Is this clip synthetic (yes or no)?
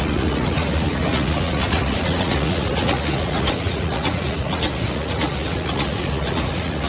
yes